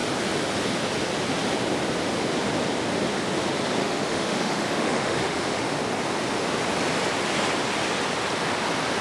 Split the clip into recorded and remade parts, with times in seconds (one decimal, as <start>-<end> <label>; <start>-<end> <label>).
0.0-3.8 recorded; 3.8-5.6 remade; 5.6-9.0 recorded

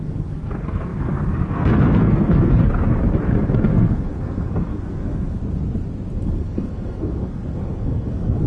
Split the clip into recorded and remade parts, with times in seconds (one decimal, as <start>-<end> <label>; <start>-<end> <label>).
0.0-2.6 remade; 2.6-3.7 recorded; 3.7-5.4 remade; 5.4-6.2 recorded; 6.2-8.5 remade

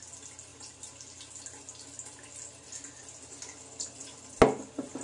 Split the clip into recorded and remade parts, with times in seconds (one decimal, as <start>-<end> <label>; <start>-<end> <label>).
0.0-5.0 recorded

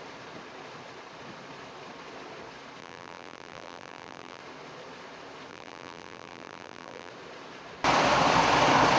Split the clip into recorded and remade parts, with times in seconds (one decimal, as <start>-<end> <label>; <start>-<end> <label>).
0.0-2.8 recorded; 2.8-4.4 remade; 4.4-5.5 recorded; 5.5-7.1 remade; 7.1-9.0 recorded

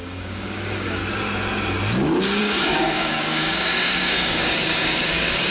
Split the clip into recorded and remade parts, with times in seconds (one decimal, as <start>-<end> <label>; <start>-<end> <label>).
0.0-1.0 remade; 1.0-2.4 recorded; 2.4-5.5 remade